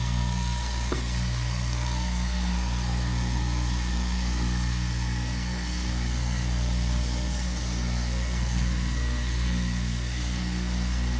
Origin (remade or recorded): remade